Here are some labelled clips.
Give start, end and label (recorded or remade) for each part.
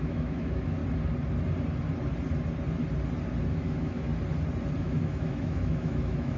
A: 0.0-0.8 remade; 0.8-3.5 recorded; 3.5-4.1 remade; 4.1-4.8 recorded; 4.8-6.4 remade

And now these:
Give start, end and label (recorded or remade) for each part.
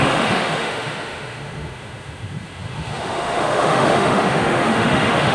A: 0.0-5.3 remade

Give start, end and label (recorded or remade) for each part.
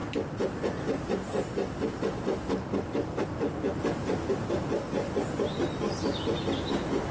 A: 0.0-7.1 recorded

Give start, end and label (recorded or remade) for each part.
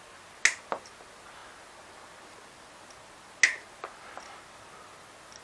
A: 0.0-5.4 recorded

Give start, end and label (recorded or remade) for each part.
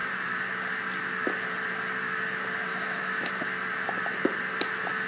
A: 0.0-2.7 recorded; 2.7-3.3 remade; 3.3-5.1 recorded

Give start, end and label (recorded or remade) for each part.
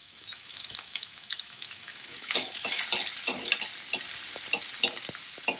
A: 0.0-2.8 remade; 2.8-5.6 recorded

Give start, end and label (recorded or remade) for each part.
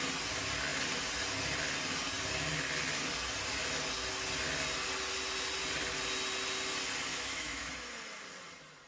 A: 0.0-7.1 recorded; 7.1-7.7 remade; 7.7-8.9 recorded